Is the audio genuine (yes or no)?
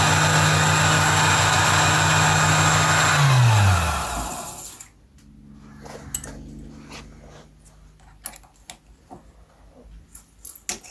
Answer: yes